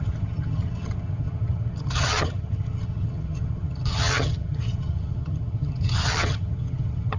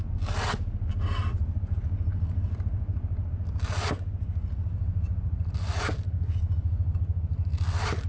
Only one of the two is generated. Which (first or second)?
first